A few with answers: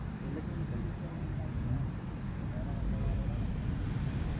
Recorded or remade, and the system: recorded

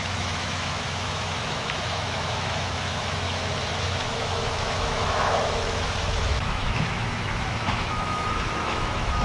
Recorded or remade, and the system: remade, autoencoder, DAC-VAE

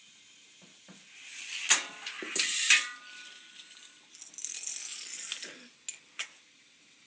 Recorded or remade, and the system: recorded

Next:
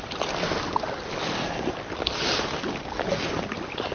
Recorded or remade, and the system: recorded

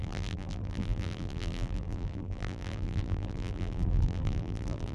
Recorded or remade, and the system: remade, vocoder, BigVGAN v2